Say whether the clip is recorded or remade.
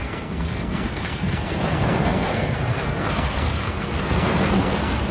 remade